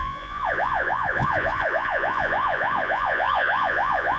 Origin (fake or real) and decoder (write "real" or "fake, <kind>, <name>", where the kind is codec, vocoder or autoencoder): fake, vocoder, Vocos